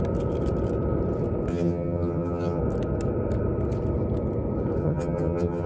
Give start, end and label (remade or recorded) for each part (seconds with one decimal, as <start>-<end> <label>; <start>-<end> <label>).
0.0-1.5 recorded; 1.5-2.6 remade; 2.6-4.8 recorded; 4.8-5.7 remade